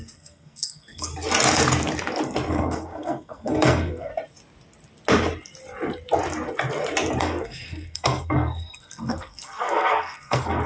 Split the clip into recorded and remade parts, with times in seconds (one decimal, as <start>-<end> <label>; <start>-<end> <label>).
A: 0.0-1.1 remade; 1.1-2.5 recorded; 2.5-4.1 remade; 4.1-7.2 recorded; 7.2-10.7 remade